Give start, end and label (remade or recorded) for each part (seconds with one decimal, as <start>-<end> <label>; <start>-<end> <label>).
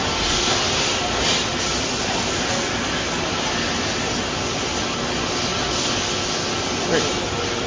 0.0-7.7 recorded